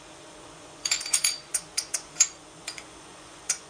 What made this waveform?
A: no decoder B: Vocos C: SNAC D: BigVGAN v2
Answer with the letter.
B